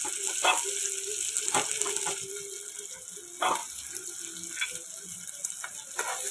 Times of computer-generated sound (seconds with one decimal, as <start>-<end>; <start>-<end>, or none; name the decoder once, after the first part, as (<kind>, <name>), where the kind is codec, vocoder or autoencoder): none